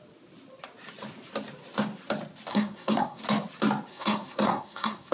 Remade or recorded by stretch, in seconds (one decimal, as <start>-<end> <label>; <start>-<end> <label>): 0.0-2.5 recorded; 2.5-3.2 remade; 3.2-3.9 recorded; 3.9-5.1 remade